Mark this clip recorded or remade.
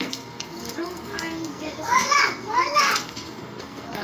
remade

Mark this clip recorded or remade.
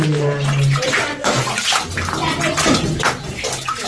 recorded